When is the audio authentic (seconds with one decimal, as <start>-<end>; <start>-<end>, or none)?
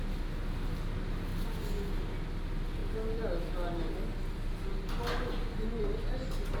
0.0-6.6